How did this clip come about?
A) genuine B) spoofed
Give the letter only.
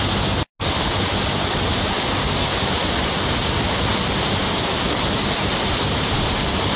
A